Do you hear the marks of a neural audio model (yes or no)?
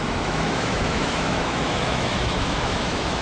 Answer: yes